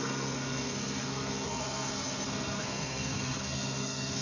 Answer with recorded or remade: remade